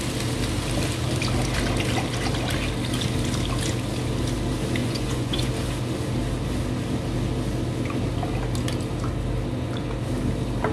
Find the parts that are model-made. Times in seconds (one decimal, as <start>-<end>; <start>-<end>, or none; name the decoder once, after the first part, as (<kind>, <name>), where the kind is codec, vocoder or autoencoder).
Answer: 4.8-5.5 (vocoder, Vocos)